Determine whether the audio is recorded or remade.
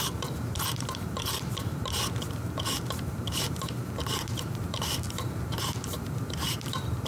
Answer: remade